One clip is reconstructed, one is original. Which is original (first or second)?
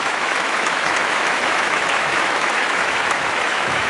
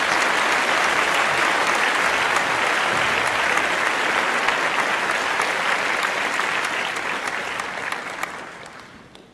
second